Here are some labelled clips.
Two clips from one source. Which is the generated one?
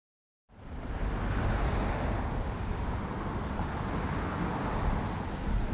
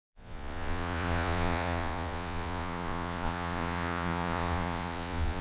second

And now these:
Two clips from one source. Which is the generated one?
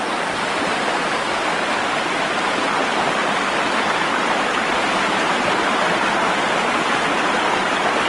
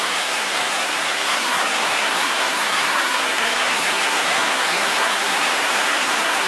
second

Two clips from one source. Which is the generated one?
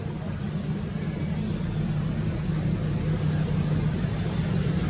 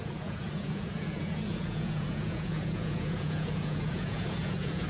second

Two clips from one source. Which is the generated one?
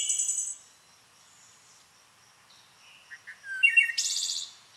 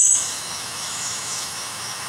second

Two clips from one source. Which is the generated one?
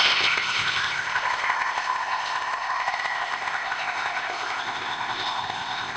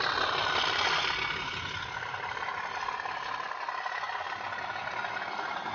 first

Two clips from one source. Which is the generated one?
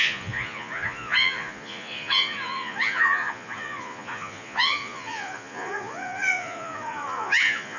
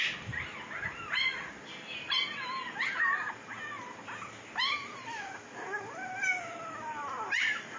first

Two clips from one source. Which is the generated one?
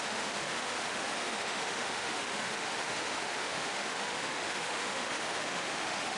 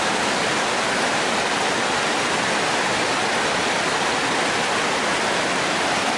first